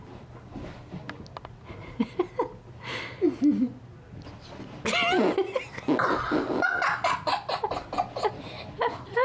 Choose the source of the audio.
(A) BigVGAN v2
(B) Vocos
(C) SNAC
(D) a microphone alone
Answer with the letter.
D